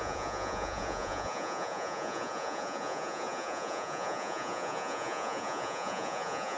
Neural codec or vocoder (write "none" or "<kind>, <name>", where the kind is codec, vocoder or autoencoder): vocoder, Vocos